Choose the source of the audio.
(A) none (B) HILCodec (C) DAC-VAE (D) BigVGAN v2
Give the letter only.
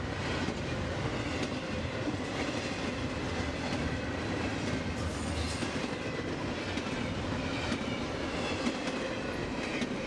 A